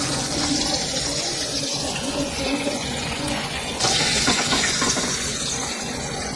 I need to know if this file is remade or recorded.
remade